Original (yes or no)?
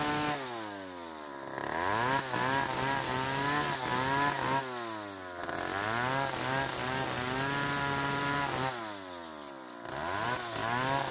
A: yes